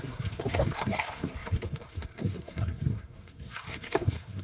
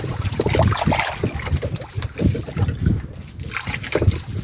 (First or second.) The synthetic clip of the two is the first